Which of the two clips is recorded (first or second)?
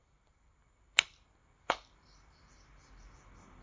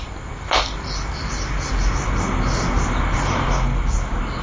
second